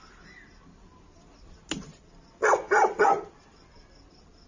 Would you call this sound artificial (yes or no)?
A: no